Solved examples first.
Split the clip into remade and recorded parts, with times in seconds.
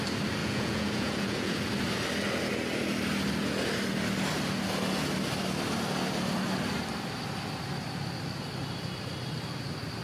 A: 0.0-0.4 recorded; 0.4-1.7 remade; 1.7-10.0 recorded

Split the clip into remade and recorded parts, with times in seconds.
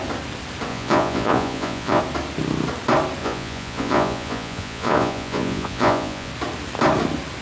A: 0.0-0.7 recorded; 0.7-2.0 remade; 2.0-3.2 recorded; 3.2-6.3 remade; 6.3-7.4 recorded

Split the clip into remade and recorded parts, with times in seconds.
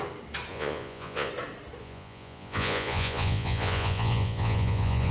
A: 0.0-0.5 recorded; 0.5-1.3 remade; 1.3-1.8 recorded; 1.8-5.1 remade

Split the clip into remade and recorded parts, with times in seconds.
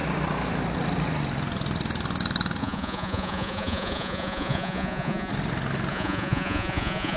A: 0.0-2.6 recorded; 2.6-5.3 remade; 5.3-5.9 recorded; 5.9-7.2 remade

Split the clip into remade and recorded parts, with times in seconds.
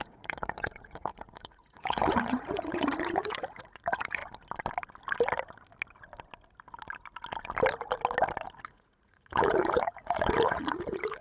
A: 0.0-4.2 remade; 4.2-8.6 recorded; 8.6-11.2 remade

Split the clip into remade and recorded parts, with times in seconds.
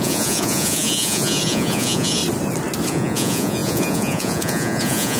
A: 0.0-2.2 remade; 2.2-2.9 recorded; 2.9-5.2 remade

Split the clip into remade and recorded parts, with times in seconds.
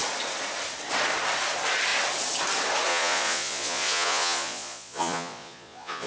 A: 0.0-2.9 recorded; 2.9-6.1 remade